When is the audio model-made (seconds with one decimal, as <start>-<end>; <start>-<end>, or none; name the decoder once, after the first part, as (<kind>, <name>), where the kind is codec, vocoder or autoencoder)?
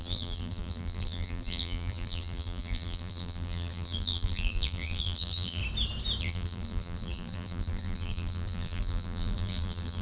0.0-5.6 (vocoder, BigVGAN v2); 6.2-10.0